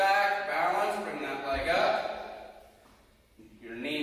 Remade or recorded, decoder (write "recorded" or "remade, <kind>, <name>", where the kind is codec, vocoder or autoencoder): recorded